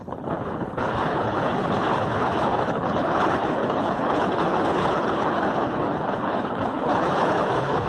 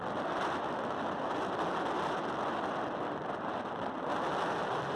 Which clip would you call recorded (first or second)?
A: second